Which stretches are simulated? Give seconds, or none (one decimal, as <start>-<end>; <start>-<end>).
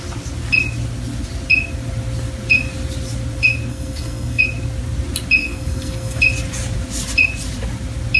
3.7-4.4; 5.4-6.2